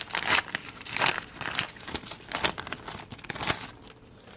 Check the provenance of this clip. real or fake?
real